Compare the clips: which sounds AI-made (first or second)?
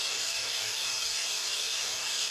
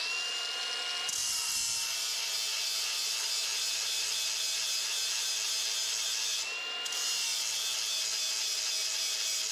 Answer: first